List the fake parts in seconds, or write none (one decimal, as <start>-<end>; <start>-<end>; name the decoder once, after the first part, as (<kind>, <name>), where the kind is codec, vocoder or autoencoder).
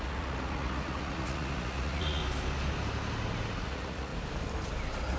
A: 0.0-2.2 (vocoder, Vocos); 3.5-4.1